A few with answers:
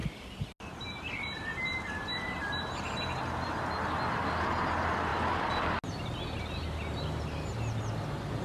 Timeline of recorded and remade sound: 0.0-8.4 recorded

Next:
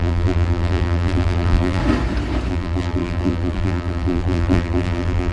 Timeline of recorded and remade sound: 0.0-1.8 remade; 1.8-2.5 recorded; 2.5-5.3 remade

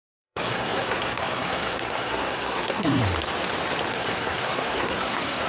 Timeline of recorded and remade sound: 0.0-3.0 remade; 3.0-3.9 recorded; 3.9-5.5 remade